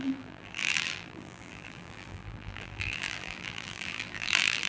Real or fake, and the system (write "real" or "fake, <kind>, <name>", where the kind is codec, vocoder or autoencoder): fake, vocoder, BigVGAN v2